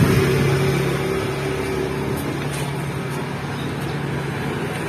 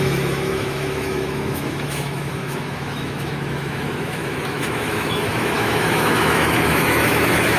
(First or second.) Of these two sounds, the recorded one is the first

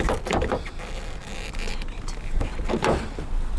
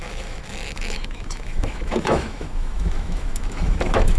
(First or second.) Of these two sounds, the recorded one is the first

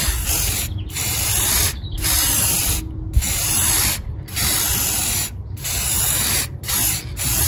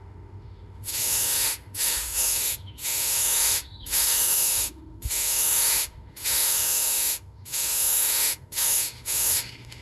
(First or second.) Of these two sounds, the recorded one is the first